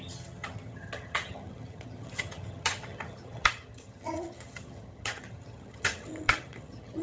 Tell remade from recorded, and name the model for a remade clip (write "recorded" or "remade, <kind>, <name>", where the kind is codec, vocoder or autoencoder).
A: remade, vocoder, HiFi-GAN